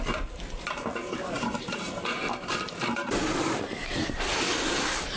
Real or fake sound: real